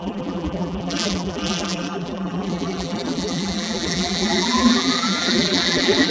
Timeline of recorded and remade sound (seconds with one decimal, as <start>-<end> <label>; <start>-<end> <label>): 0.0-6.1 remade